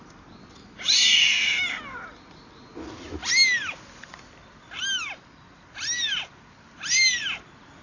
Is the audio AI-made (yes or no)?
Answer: no